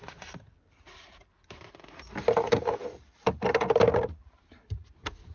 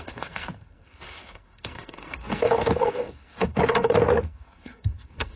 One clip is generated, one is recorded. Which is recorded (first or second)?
first